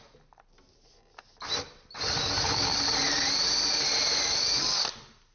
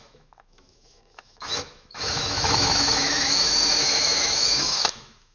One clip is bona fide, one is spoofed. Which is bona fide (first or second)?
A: first